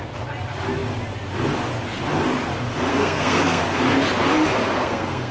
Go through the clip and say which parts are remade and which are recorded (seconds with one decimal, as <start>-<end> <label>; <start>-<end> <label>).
0.0-2.9 recorded; 2.9-3.6 remade; 3.6-4.6 recorded; 4.6-5.3 remade